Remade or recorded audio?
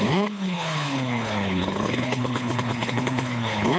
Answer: remade